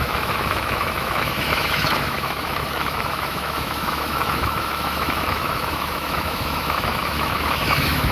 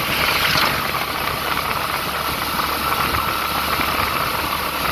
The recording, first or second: second